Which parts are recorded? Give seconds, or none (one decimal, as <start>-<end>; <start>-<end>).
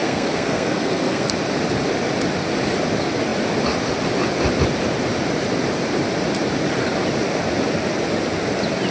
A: 1.3-8.9